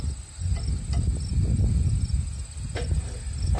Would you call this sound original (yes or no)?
yes